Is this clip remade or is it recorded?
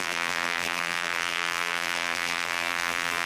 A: remade